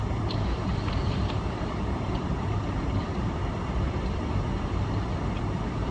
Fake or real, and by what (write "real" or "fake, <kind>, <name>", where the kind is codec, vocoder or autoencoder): fake, vocoder, BigVGAN v2